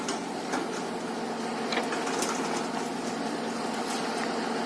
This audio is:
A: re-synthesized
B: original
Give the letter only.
B